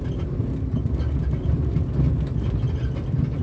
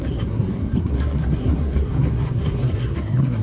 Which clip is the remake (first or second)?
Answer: second